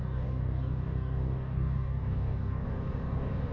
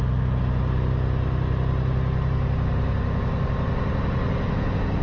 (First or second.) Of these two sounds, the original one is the second